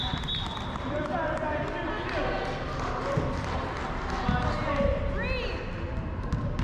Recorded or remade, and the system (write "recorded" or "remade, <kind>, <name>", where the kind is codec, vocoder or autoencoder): recorded